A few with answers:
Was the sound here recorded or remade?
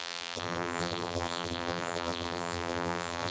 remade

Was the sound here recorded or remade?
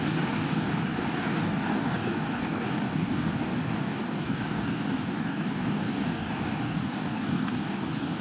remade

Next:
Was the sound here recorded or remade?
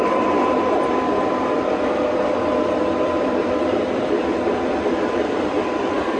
remade